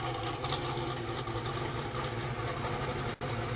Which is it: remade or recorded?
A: recorded